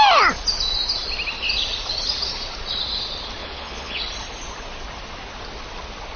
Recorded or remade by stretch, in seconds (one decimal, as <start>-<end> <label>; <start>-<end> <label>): 0.0-3.4 recorded; 3.4-4.0 remade; 4.0-6.2 recorded